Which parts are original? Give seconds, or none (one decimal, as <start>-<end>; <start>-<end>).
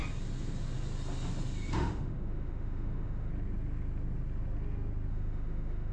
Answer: 0.0-1.7; 3.3-5.1